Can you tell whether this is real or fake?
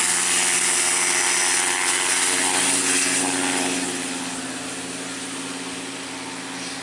real